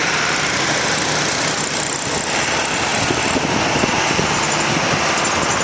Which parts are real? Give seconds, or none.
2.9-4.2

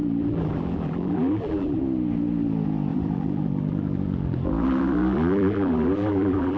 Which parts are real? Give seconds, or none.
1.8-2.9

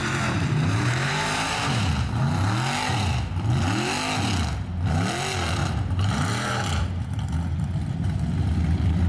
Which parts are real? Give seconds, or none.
1.9-5.6; 7.0-9.1

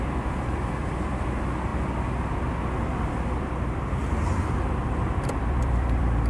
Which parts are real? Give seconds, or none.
1.7-3.1

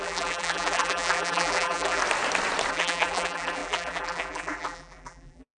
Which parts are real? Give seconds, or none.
2.0-2.7

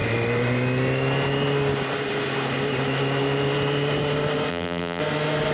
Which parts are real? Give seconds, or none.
0.0-4.5; 5.0-5.5